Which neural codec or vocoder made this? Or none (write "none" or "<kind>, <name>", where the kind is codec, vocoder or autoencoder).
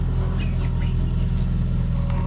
none